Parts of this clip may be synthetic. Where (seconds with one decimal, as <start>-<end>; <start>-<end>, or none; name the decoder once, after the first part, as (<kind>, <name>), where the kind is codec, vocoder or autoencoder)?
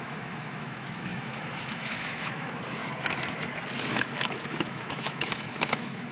0.0-2.8 (autoencoder, DAC-VAE); 3.8-6.1